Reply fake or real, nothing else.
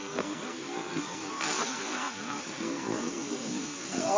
fake